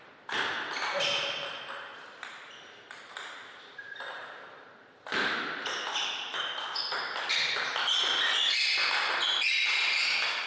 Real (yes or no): yes